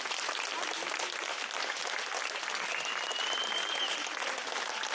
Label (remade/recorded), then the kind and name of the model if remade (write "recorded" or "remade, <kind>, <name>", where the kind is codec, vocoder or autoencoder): recorded